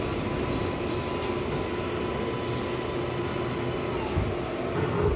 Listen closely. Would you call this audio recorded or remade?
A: recorded